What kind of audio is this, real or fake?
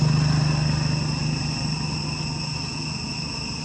real